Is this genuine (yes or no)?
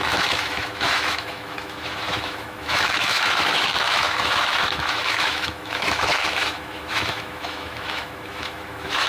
no